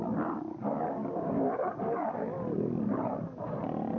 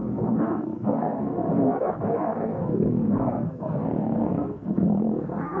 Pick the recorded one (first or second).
first